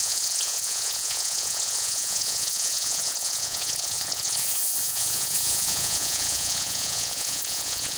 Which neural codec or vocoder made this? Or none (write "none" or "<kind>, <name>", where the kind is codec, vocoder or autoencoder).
vocoder, Vocos